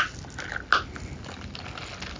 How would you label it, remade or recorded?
recorded